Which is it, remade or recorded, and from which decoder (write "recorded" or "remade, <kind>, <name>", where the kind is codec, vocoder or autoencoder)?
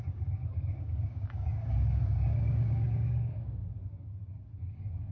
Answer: remade, codec, DAC